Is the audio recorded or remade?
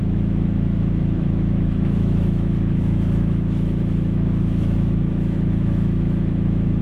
remade